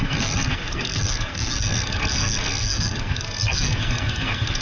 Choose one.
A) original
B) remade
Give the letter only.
B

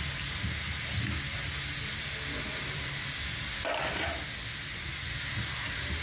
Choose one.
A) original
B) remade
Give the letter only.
A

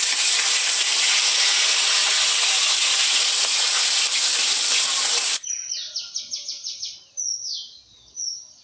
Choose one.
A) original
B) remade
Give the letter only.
A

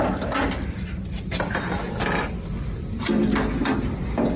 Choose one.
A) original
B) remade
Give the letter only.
A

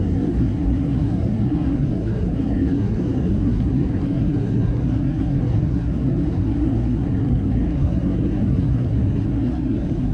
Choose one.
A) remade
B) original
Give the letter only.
A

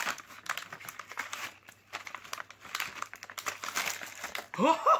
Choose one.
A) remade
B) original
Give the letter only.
B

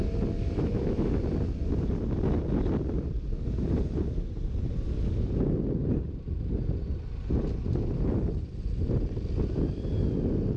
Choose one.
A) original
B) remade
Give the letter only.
A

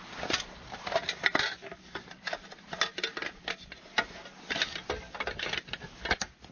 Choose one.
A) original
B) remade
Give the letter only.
A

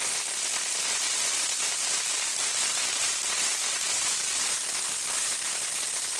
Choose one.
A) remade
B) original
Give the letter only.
B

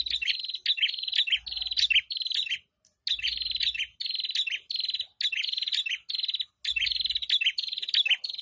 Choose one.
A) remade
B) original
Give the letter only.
B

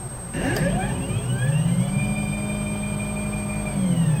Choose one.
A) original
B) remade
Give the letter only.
A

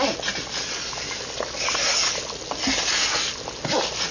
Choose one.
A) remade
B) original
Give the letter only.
B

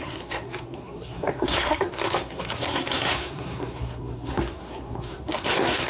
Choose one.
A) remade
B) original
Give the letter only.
A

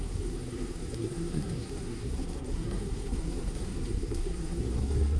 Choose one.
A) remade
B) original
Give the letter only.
A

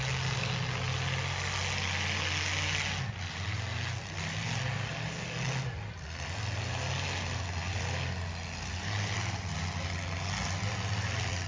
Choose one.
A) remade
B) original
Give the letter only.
B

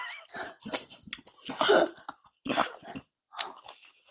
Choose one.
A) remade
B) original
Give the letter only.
B